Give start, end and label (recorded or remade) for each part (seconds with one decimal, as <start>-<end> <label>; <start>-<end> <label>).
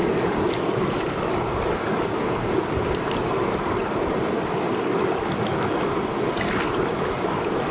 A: 0.0-7.7 recorded